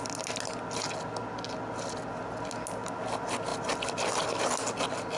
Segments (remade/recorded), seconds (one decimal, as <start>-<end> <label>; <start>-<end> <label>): 0.0-5.2 recorded